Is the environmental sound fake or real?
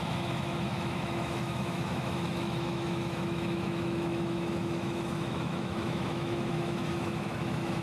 fake